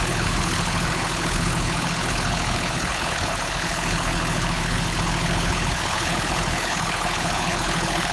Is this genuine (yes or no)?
no